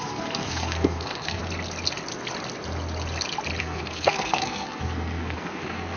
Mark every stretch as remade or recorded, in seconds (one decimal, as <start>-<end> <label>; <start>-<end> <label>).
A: 0.0-1.4 remade; 1.4-3.6 recorded; 3.6-6.0 remade